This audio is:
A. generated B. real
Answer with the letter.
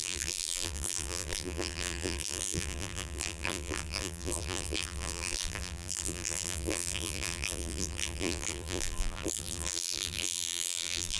A